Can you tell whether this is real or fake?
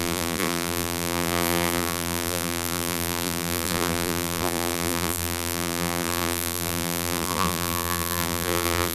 fake